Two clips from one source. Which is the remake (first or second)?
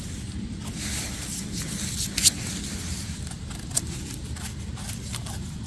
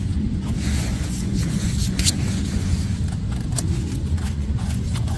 second